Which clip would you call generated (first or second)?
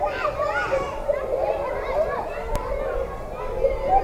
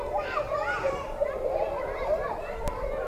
second